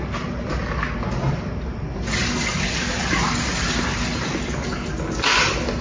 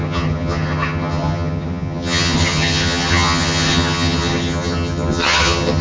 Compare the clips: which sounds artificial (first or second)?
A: second